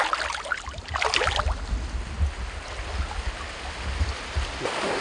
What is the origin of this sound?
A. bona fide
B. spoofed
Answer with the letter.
A